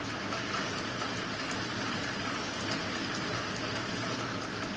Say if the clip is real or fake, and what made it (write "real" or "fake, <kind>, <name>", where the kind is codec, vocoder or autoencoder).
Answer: real